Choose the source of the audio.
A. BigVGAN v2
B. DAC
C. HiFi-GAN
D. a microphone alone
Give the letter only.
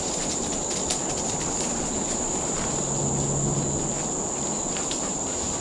D